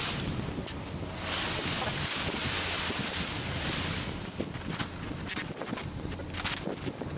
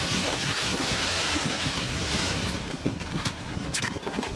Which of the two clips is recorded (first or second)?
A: first